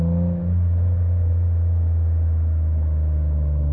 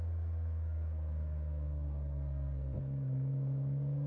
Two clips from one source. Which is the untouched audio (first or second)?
first